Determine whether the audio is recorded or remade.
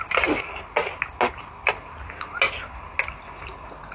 recorded